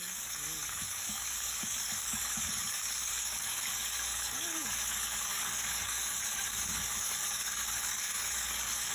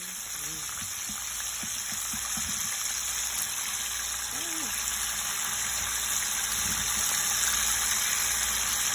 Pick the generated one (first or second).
first